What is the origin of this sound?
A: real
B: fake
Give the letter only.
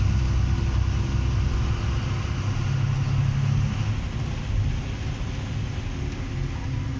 A